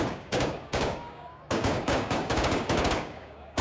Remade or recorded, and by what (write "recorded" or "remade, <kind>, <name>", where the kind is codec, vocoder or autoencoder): remade, codec, DAC